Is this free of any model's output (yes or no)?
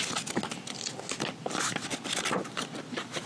yes